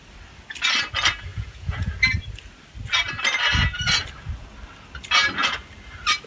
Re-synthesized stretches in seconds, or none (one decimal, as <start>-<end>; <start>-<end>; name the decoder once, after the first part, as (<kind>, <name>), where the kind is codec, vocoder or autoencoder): 1.3-1.9 (vocoder, Vocos)